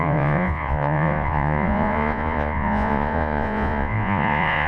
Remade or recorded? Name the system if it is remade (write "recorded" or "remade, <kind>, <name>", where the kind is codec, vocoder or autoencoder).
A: remade, vocoder, Vocos